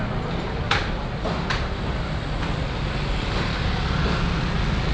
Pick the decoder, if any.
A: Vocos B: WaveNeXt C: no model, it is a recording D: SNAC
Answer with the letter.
C